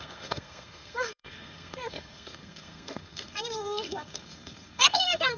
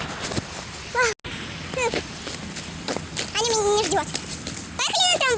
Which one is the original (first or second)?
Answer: second